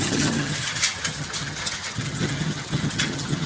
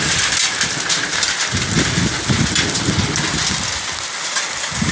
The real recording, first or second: second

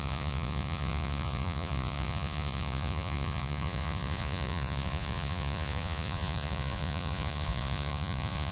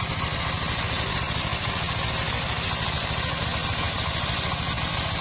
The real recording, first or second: second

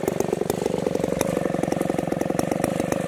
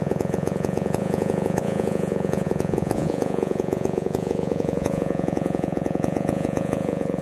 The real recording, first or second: first